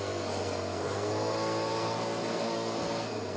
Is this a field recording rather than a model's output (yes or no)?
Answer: no